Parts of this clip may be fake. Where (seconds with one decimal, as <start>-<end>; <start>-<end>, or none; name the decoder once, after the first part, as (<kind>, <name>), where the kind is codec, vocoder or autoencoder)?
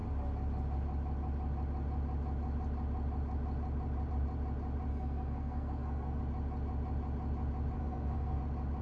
4.9-6.2 (codec, SNAC); 7.8-8.4